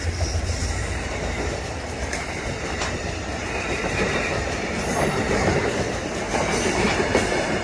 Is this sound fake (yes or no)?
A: yes